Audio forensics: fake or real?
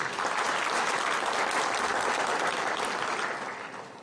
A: real